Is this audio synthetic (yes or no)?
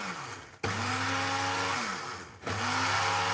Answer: no